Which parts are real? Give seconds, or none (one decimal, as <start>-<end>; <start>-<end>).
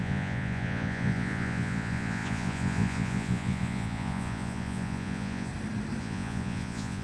5.5-6.0